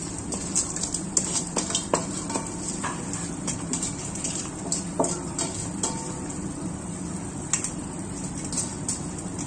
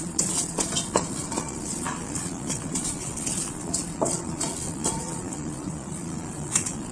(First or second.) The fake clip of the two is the second